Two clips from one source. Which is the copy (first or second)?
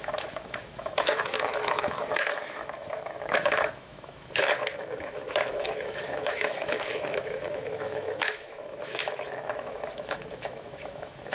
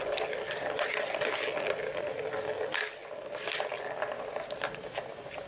first